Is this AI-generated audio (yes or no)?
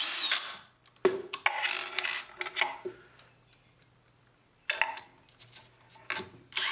no